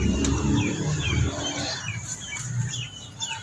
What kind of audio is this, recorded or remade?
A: remade